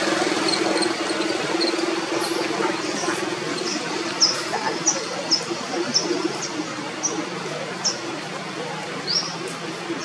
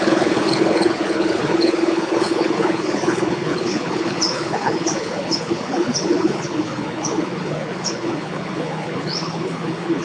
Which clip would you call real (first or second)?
first